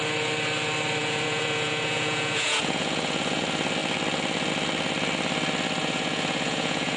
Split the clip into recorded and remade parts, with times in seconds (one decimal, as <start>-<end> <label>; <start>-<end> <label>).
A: 0.0-1.0 recorded; 1.0-3.4 remade; 3.4-5.8 recorded; 5.8-7.0 remade